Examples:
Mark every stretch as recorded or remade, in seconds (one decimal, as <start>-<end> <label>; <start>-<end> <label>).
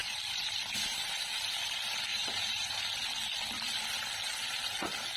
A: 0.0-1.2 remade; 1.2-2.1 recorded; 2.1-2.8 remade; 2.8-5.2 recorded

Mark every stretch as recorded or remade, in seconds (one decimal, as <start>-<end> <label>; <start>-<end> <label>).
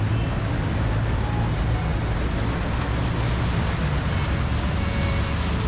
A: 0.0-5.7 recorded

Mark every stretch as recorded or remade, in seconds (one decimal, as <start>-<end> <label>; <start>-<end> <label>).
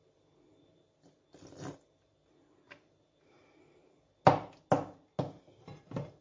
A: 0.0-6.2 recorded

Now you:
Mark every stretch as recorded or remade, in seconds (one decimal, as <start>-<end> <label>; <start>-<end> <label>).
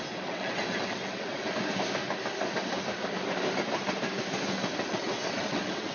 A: 0.0-1.4 remade; 1.4-4.9 recorded; 4.9-5.9 remade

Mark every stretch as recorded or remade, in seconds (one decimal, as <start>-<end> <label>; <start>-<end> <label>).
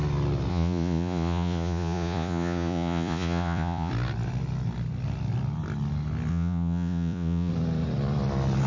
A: 0.0-0.5 recorded; 0.5-3.9 remade; 3.9-6.3 recorded; 6.3-7.5 remade; 7.5-8.7 recorded